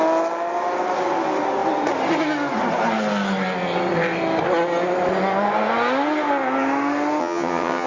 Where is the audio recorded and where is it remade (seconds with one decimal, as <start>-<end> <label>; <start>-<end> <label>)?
0.0-7.2 recorded; 7.2-7.9 remade

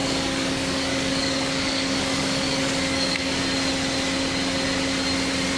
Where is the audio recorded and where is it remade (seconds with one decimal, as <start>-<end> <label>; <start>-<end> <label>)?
0.0-3.4 remade; 3.4-5.6 recorded

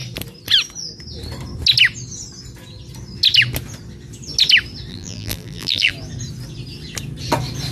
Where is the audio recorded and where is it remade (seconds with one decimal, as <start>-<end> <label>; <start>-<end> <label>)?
0.0-4.9 recorded; 4.9-5.9 remade; 5.9-7.7 recorded

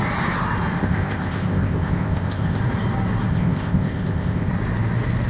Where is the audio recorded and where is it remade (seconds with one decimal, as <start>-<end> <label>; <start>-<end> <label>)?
0.0-0.8 recorded; 0.8-2.6 remade; 2.6-3.3 recorded; 3.3-4.5 remade; 4.5-5.3 recorded

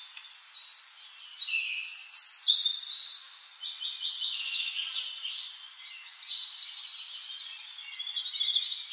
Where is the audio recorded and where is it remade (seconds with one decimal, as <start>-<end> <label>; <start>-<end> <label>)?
0.0-1.6 remade; 1.6-4.8 recorded; 4.8-7.5 remade; 7.5-8.9 recorded